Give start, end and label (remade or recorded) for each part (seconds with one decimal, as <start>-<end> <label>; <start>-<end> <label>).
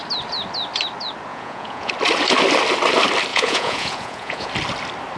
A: 0.0-1.3 recorded; 1.3-1.9 remade; 1.9-3.3 recorded; 3.3-4.5 remade; 4.5-5.2 recorded